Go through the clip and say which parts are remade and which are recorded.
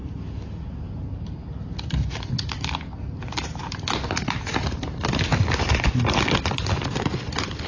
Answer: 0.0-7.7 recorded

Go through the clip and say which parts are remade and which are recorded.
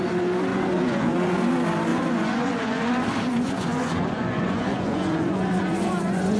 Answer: 0.0-0.5 recorded; 0.5-1.5 remade; 1.5-1.9 recorded; 1.9-2.9 remade; 2.9-3.3 recorded; 3.3-6.4 remade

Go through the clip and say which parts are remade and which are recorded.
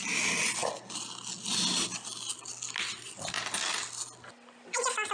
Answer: 0.0-5.1 recorded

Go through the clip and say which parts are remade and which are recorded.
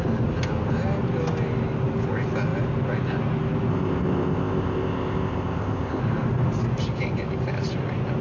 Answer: 0.0-3.7 recorded; 3.7-6.0 remade; 6.0-8.2 recorded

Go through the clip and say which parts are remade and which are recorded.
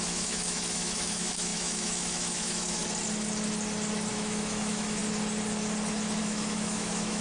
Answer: 0.0-2.8 remade; 2.8-4.1 recorded; 4.1-5.0 remade; 5.0-6.2 recorded; 6.2-7.2 remade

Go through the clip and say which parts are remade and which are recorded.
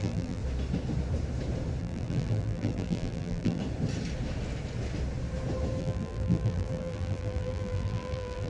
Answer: 0.0-0.4 remade; 0.4-1.8 recorded; 1.8-3.6 remade; 3.6-5.8 recorded; 5.8-8.5 remade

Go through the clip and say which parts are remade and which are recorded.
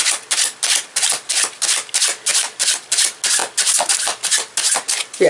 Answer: 0.0-5.3 recorded